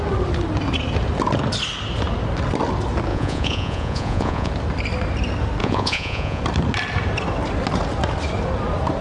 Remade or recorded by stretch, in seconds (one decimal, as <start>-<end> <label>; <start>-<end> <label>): 0.0-3.1 recorded; 3.1-4.5 remade; 4.5-5.6 recorded; 5.6-6.4 remade; 6.4-9.0 recorded